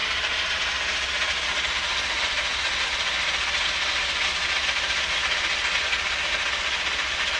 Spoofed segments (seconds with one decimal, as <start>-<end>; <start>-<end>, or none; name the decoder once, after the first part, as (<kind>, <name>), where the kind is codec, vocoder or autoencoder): none